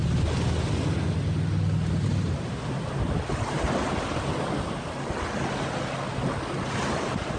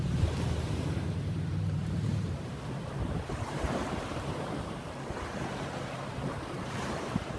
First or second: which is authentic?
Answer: first